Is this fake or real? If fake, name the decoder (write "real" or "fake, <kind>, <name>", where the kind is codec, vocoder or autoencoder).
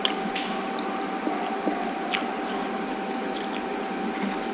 real